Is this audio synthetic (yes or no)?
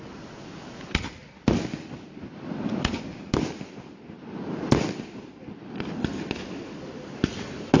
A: no